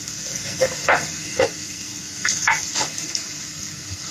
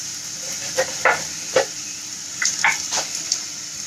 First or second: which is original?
second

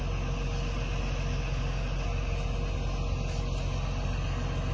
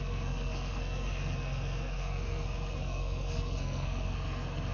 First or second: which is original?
first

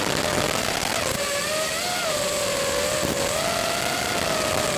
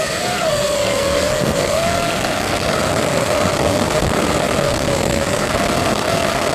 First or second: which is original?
first